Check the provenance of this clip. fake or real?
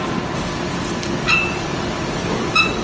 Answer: fake